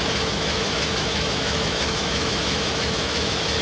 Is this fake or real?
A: fake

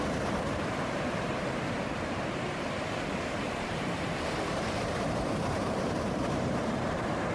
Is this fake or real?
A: fake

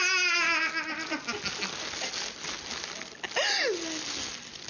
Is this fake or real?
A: real